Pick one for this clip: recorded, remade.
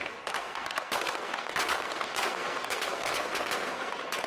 remade